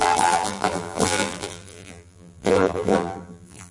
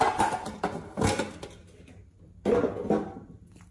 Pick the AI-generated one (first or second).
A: first